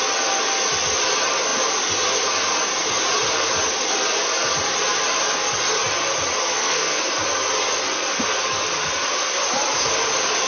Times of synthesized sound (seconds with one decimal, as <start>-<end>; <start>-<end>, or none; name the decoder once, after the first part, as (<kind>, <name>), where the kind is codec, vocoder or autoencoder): 6.4-7.0 (codec, SNAC)